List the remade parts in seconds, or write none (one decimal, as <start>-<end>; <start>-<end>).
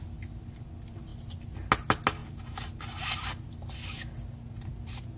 none